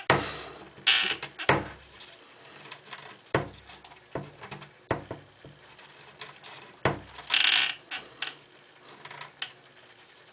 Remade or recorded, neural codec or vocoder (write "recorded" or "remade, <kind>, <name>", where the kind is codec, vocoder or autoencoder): recorded